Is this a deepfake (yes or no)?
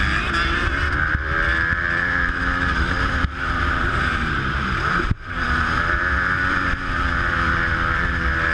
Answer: yes